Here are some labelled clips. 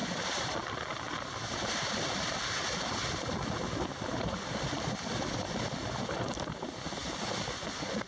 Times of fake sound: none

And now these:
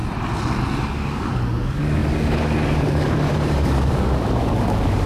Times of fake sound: 0.9-5.1 (codec, DAC)

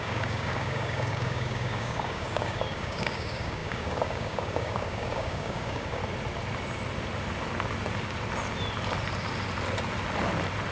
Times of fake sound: 0.0-6.0 (codec, DAC)

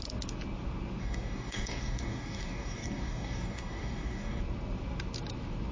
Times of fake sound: 1.0-4.4 (codec, DAC)

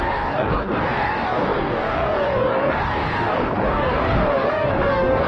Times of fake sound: 0.0-5.3 (codec, DAC)

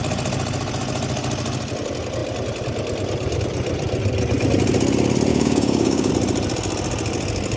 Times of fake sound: 5.3-6.1 (codec, DAC)

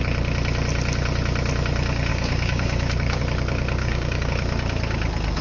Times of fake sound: 2.1-3.2 (codec, DAC); 3.8-4.3

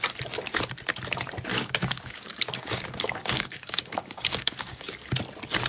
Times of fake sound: 1.5-4.9 (codec, DAC)